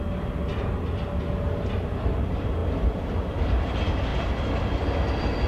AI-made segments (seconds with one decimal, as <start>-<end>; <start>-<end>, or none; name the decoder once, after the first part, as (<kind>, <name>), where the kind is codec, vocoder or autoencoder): none